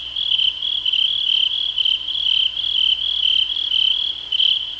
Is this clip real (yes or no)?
yes